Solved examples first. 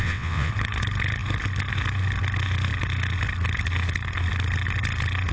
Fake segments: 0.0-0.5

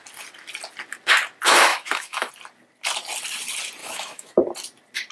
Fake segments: 1.7-2.3; 3.8-4.4

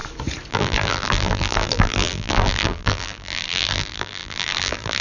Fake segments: 0.5-5.0

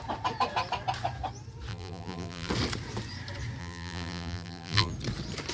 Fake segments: 1.7-2.5; 3.6-4.9

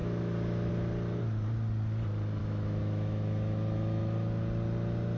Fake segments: 0.0-0.7; 2.4-4.0

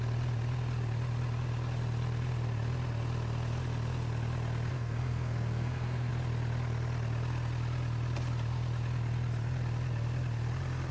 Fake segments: 4.7-6.1